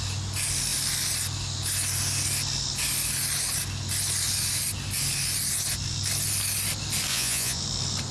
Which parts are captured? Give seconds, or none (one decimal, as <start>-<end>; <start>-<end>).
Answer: 0.0-7.1; 7.6-8.1